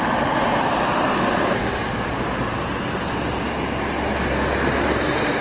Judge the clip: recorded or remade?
recorded